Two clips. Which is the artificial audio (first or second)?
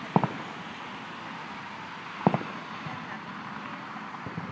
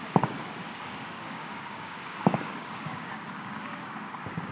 second